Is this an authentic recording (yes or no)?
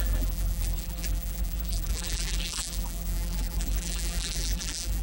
no